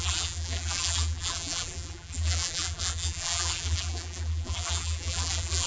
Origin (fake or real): fake